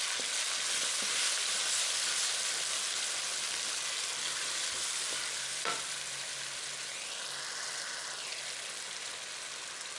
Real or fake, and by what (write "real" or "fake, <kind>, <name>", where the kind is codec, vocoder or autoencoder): real